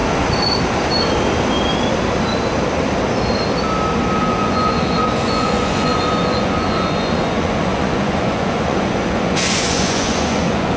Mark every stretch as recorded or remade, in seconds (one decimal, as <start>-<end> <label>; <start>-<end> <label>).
0.0-4.2 recorded; 4.2-10.8 remade